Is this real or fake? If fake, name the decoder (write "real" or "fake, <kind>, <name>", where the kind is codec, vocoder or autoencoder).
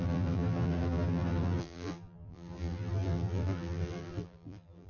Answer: fake, vocoder, BigVGAN v2